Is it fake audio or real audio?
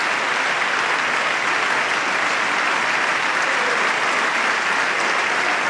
real